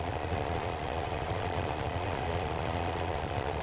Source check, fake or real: fake